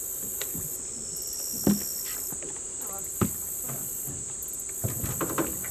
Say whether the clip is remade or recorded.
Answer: recorded